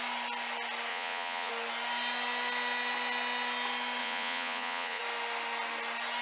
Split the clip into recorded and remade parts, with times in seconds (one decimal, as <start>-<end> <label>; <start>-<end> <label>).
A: 0.0-0.9 recorded; 0.9-1.5 remade; 1.5-4.0 recorded; 4.0-5.0 remade; 5.0-6.2 recorded